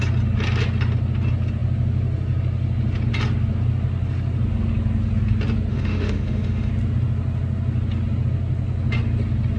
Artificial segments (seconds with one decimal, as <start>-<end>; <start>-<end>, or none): 5.7-6.7

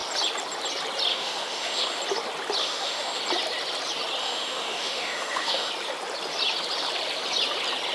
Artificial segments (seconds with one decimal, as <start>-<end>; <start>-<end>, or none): 1.1-2.0; 2.6-3.2; 4.2-5.7